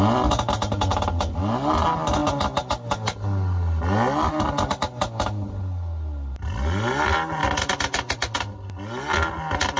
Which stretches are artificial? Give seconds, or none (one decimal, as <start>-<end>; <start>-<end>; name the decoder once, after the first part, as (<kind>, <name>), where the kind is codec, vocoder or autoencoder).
0.9-1.4 (vocoder, BigVGAN v2)